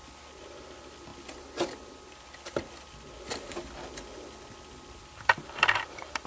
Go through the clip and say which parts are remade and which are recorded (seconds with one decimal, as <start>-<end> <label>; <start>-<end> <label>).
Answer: 0.0-5.0 recorded; 5.0-6.3 remade